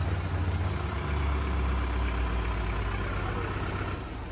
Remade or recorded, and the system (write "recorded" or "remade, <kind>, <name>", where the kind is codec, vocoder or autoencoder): recorded